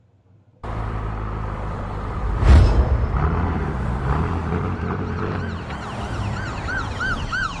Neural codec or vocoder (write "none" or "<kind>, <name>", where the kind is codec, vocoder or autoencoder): vocoder, BigVGAN v2